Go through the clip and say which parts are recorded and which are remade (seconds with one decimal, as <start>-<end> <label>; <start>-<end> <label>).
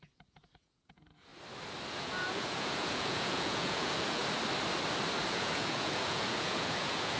0.0-1.3 remade; 1.3-2.0 recorded; 2.0-4.2 remade; 4.2-5.3 recorded; 5.3-7.2 remade